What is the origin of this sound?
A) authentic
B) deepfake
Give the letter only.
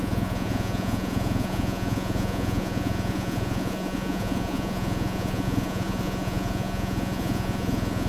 B